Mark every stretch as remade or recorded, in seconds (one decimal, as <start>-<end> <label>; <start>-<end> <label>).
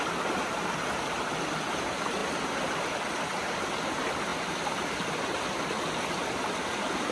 0.0-7.1 recorded